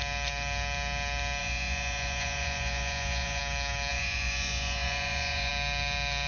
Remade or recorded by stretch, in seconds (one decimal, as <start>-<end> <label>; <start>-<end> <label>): 0.0-1.4 recorded; 1.4-3.4 remade; 3.4-3.9 recorded; 3.9-5.5 remade; 5.5-6.3 recorded